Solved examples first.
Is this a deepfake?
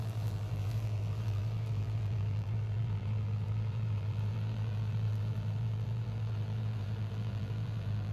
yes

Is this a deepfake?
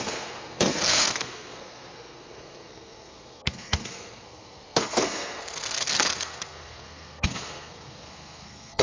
yes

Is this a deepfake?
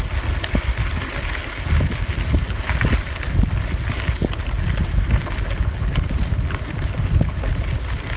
no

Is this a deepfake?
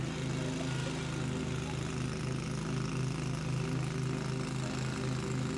no